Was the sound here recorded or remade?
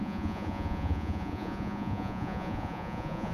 remade